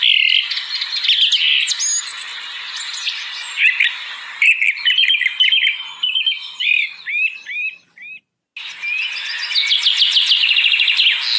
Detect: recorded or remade recorded